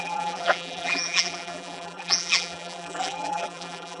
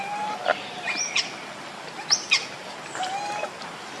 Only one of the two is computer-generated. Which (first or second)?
first